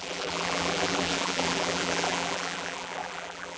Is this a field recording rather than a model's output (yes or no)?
no